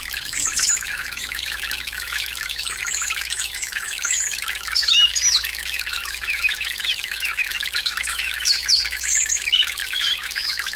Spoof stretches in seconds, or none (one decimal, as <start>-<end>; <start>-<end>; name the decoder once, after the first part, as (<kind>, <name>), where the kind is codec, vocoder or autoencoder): 0.0-10.8 (autoencoder, DAC-VAE)